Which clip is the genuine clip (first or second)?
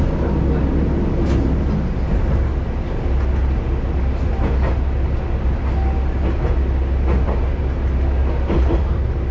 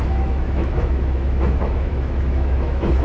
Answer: first